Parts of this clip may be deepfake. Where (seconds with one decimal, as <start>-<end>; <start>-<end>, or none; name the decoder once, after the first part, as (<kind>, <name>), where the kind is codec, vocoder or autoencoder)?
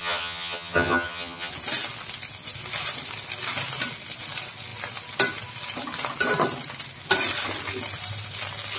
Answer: 0.0-1.5 (vocoder, HiFi-GAN)